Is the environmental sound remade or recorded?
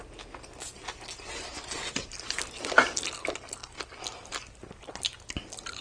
recorded